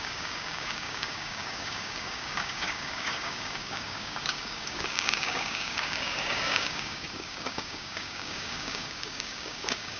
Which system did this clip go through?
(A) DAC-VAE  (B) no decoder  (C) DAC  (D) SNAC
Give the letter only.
C